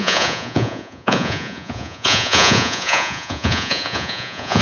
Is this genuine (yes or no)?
no